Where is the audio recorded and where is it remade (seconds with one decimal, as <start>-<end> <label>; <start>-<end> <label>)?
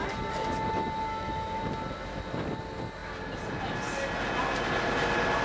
0.0-1.1 recorded; 1.1-1.6 remade; 1.6-5.4 recorded